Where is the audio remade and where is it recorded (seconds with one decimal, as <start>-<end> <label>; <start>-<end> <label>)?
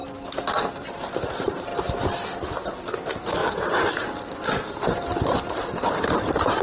0.0-0.7 recorded; 0.7-1.7 remade; 1.7-2.5 recorded; 2.5-6.6 remade